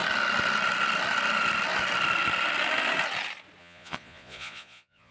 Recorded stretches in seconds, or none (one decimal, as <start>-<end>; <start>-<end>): 0.0-3.6